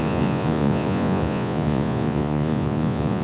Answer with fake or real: fake